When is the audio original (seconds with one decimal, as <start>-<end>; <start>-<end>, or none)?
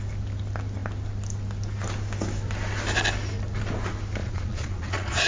0.0-4.2